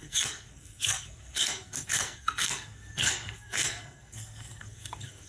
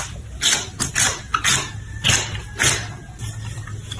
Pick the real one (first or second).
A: second